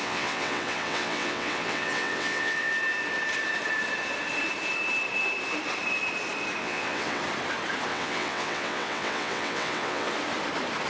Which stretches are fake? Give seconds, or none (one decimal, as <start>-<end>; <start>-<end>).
0.0-2.7; 6.6-7.2; 7.9-10.1